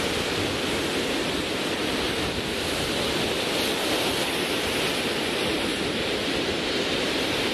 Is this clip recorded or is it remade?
recorded